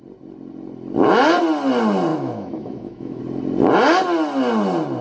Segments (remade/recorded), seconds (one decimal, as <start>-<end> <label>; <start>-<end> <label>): 0.0-2.1 recorded; 2.1-3.2 remade; 3.2-5.0 recorded